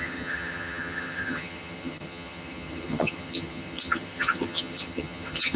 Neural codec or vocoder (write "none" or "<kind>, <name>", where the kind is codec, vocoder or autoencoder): vocoder, HiFi-GAN